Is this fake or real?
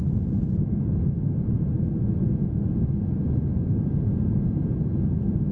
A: real